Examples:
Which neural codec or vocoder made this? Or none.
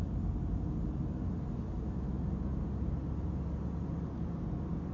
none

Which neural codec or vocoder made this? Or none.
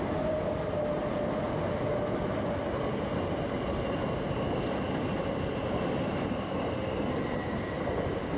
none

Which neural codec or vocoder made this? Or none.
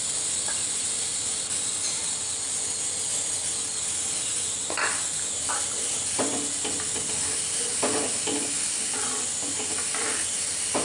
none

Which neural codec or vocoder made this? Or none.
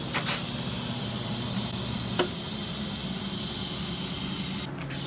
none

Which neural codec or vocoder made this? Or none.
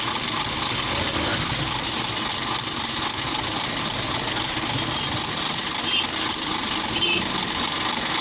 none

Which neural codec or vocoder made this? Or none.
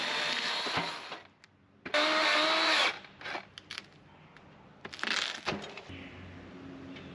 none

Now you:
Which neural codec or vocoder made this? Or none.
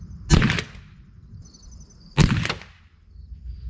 none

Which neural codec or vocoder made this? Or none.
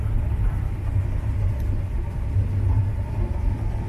none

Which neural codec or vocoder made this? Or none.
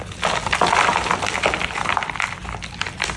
none